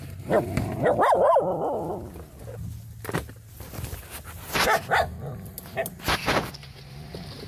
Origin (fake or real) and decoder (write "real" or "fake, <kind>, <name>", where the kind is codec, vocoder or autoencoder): real